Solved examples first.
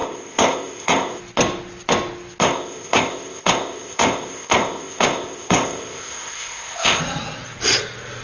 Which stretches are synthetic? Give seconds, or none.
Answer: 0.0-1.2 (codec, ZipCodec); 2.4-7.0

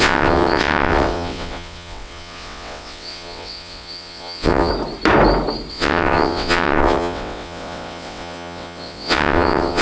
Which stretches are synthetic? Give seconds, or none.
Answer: 0.0-4.7 (vocoder, WaveNeXt); 5.7-9.8

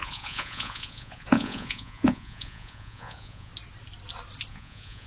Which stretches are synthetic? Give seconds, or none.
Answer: 0.0-3.5 (vocoder, Vocos); 4.5-5.1